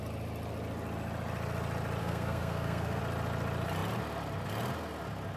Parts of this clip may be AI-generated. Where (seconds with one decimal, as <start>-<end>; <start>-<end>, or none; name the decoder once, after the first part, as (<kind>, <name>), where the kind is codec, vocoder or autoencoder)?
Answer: 2.0-3.0 (codec, SNAC)